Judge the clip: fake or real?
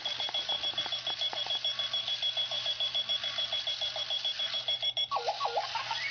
fake